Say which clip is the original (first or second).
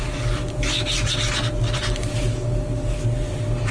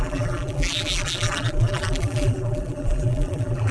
first